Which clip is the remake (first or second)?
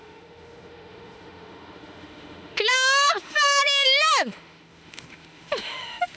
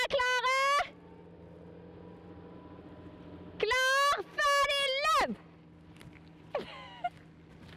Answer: first